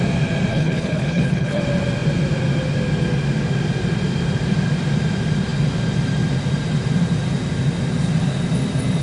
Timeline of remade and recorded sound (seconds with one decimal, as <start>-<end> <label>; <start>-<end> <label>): 0.0-0.5 recorded; 0.5-1.6 remade; 1.6-9.0 recorded